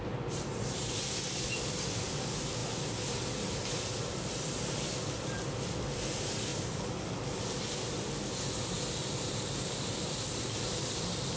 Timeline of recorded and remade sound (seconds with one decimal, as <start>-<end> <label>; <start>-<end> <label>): 0.0-2.6 remade; 2.6-3.8 recorded; 3.8-6.5 remade; 6.5-8.9 recorded; 8.9-11.4 remade